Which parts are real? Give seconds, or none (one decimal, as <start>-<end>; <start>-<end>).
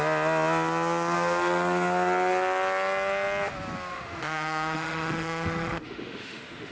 0.0-3.9